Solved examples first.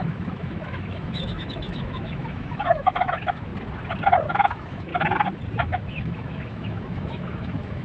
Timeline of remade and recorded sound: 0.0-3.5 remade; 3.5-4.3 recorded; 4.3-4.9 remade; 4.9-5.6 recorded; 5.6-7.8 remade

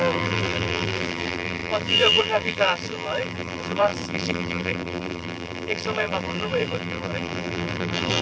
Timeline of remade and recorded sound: 0.0-8.2 remade

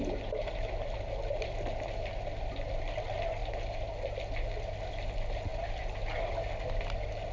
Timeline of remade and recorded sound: 0.0-7.3 recorded

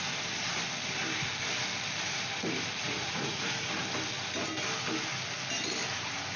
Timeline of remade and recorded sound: 0.0-2.8 recorded; 2.8-3.7 remade; 3.7-6.4 recorded